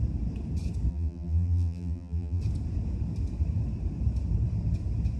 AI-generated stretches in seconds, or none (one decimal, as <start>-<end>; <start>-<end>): 0.9-2.4